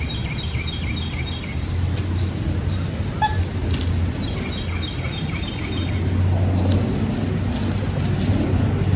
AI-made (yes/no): no